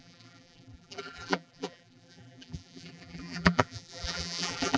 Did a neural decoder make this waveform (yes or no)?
yes